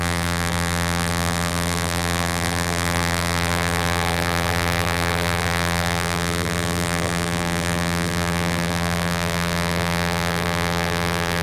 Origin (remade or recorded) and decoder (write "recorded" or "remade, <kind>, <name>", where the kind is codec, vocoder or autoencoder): remade, vocoder, BigVGAN v2